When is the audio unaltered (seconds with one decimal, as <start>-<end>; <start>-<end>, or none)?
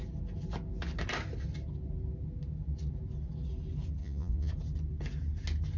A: 0.0-4.0; 4.5-5.8